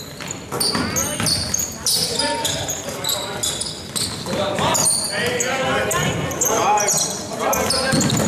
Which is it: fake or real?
real